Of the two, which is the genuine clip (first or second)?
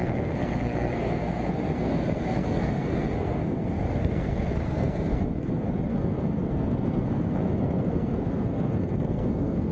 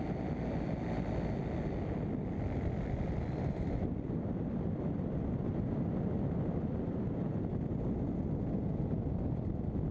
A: second